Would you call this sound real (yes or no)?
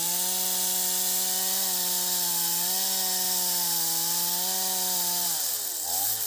yes